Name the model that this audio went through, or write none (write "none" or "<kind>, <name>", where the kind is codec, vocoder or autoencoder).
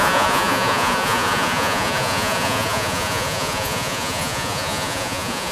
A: vocoder, Vocos